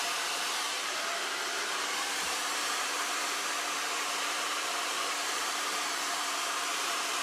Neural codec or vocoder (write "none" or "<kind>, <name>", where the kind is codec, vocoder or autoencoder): vocoder, BigVGAN v2